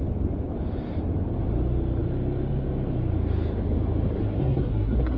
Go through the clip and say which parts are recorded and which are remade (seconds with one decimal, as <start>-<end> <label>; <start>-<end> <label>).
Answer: 0.0-4.2 recorded; 4.2-5.2 remade